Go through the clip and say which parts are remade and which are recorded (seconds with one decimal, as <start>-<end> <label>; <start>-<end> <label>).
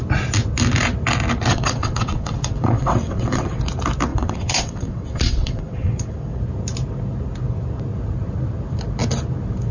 0.0-1.5 recorded; 1.5-3.6 remade; 3.6-4.1 recorded; 4.1-6.4 remade; 6.4-9.7 recorded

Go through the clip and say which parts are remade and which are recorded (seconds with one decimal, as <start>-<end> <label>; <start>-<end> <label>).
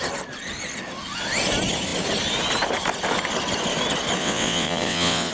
0.0-4.2 recorded; 4.2-5.3 remade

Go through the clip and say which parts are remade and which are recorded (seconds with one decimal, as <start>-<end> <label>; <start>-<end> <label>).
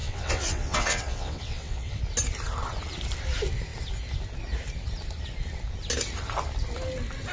0.0-2.0 remade; 2.0-7.3 recorded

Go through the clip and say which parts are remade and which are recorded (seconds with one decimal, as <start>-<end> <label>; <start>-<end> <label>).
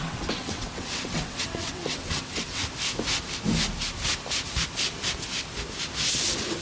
0.0-2.6 remade; 2.6-6.6 recorded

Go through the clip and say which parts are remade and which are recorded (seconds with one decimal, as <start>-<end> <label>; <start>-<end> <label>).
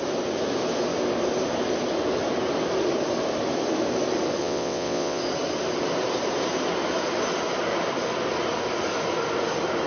0.0-4.4 recorded; 4.4-5.2 remade; 5.2-9.9 recorded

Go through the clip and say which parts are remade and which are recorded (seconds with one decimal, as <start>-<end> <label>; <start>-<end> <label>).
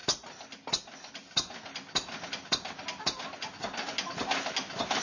0.0-5.0 recorded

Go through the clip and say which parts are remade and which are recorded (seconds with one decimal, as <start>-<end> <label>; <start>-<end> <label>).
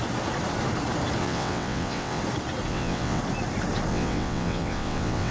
0.0-1.2 recorded; 1.2-2.2 remade; 2.2-2.7 recorded; 2.7-3.2 remade; 3.2-3.9 recorded; 3.9-5.3 remade